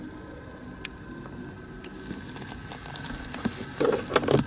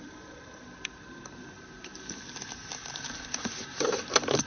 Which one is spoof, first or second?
second